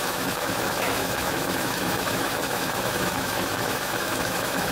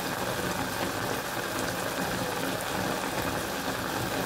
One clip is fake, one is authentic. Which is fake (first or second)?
first